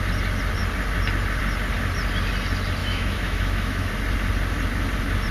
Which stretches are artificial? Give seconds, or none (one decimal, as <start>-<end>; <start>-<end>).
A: 2.8-3.9

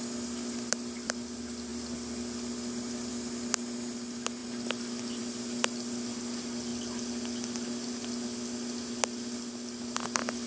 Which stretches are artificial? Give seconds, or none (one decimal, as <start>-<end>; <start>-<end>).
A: none

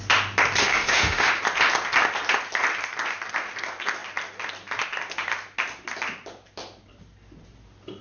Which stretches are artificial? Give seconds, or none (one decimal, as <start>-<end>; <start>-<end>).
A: 0.6-1.3

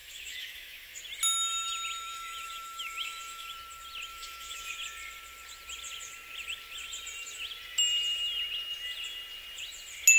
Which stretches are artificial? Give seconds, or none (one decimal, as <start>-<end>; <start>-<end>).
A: 0.0-1.0; 2.0-3.5; 4.1-4.7

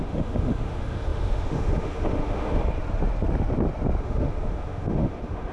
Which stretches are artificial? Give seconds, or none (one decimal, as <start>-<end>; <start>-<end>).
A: 0.0-2.6; 4.0-5.5

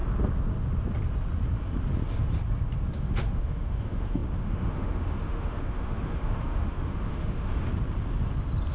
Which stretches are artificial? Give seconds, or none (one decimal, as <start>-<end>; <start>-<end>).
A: 2.9-7.7

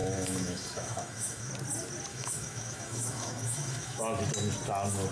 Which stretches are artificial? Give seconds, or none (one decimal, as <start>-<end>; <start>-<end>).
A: 0.0-1.5; 2.1-4.0